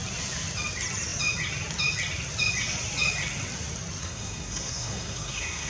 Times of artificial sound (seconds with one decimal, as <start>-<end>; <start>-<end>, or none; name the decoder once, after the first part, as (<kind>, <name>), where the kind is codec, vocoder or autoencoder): 4.0-5.7 (codec, SNAC)

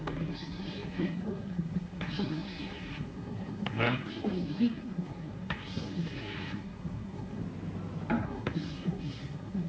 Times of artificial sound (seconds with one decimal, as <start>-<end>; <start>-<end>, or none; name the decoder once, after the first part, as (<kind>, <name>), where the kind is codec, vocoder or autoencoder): 0.0-7.4 (codec, SNAC); 8.2-9.7

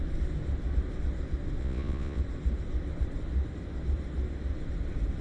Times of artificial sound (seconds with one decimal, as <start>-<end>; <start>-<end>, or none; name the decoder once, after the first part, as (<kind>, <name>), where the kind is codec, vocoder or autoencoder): 1.6-2.2 (vocoder, Vocos)

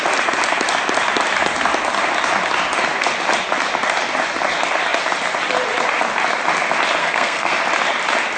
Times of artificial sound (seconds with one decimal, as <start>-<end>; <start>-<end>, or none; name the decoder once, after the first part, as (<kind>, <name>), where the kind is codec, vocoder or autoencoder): 7.0-7.6 (codec, SNAC)